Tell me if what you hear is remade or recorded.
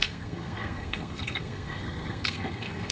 remade